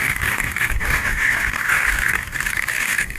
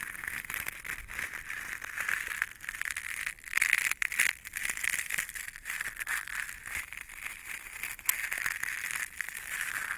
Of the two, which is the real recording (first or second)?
second